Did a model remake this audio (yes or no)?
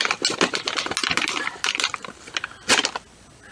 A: no